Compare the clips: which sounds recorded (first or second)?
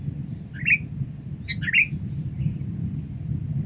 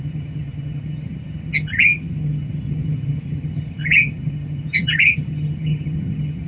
first